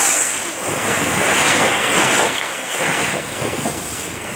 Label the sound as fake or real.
fake